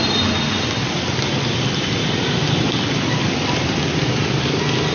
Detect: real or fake real